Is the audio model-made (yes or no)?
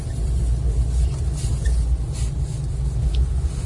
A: no